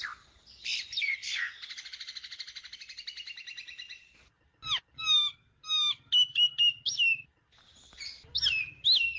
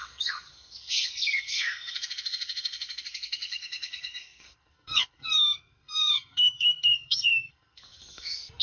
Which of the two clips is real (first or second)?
first